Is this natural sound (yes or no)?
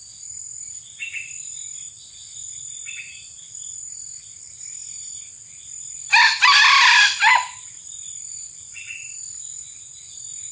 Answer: yes